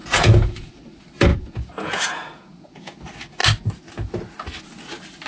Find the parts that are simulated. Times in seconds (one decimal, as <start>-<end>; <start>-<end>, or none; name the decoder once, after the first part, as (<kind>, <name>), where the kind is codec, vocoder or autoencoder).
0.0-0.7 (vocoder, Vocos); 1.3-2.9